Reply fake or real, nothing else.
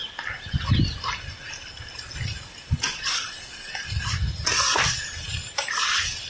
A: real